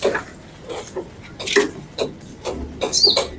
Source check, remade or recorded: recorded